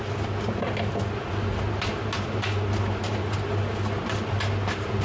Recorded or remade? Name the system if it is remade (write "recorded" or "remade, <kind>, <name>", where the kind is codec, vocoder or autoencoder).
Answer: recorded